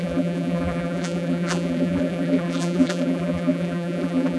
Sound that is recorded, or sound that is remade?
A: remade